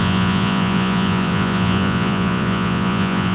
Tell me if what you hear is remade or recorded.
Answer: remade